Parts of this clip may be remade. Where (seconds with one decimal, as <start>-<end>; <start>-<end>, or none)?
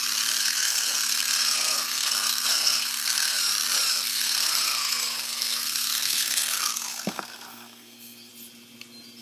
0.4-3.4; 3.9-8.3